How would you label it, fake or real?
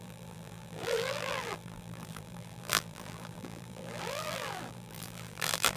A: fake